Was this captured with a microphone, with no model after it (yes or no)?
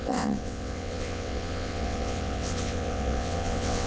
no